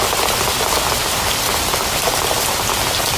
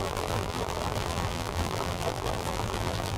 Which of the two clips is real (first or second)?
first